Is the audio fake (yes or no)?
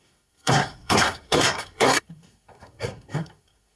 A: yes